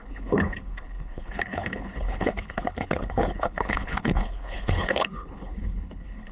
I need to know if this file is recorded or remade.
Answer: remade